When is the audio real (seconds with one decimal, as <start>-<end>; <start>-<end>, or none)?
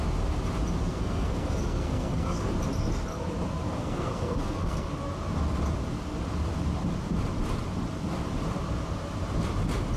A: 0.0-0.8; 2.5-3.8; 4.9-10.0